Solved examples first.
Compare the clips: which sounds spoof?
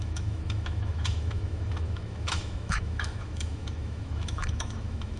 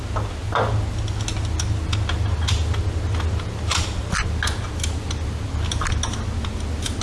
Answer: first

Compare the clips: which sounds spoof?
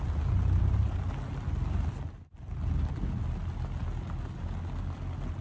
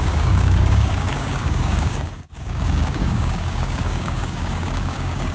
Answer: second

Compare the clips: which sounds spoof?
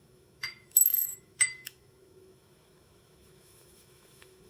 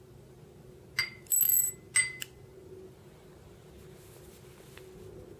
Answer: first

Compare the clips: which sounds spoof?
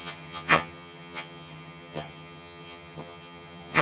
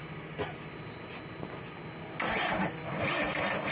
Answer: first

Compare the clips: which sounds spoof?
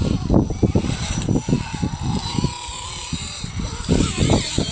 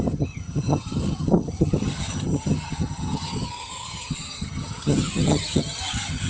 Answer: second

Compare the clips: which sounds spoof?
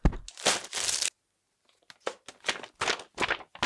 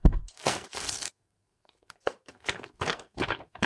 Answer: second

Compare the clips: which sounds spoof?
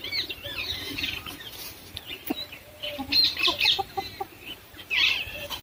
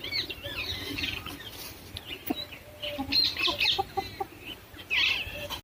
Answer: first